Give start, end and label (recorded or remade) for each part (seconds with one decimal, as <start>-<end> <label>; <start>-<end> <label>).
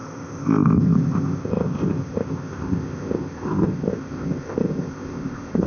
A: 0.0-5.7 remade